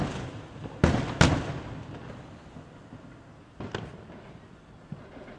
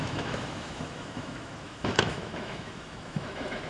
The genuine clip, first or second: first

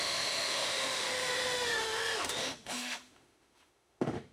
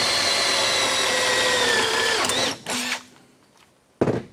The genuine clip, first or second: second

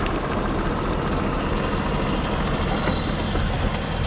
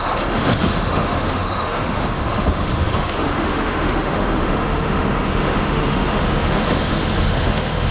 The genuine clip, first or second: first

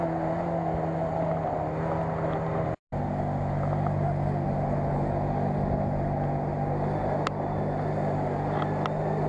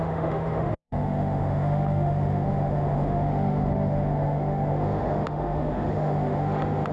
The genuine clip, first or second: first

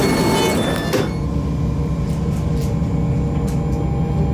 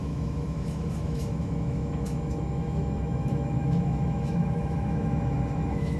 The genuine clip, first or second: first